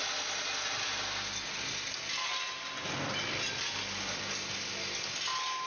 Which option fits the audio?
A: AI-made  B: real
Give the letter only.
B